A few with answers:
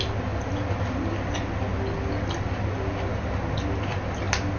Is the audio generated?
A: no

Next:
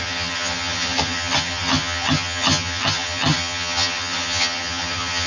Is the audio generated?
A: yes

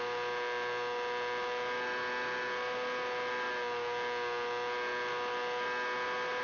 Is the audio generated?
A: no